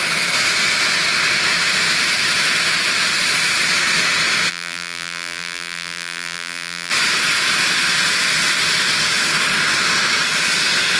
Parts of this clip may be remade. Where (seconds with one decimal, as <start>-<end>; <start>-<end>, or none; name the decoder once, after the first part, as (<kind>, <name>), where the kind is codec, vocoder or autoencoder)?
4.5-6.9 (vocoder, BigVGAN v2)